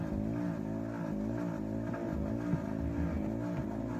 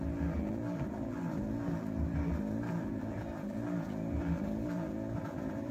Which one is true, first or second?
first